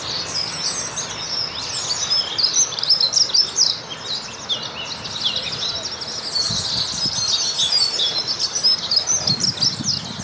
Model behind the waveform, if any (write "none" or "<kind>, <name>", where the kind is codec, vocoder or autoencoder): none